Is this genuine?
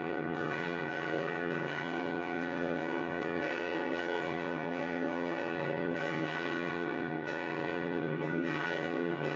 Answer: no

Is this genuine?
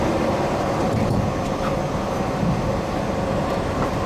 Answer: yes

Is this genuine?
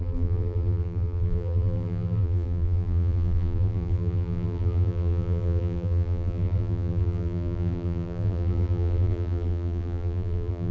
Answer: no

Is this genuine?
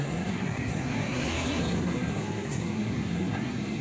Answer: no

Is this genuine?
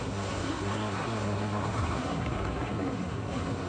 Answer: no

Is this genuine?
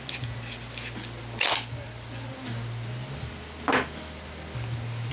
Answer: yes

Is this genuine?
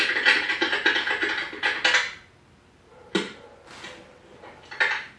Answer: yes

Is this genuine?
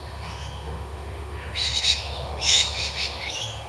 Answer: no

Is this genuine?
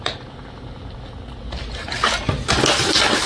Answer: yes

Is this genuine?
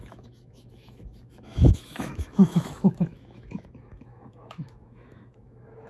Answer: no